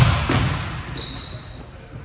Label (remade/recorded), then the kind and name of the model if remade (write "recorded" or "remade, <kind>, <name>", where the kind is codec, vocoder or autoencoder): recorded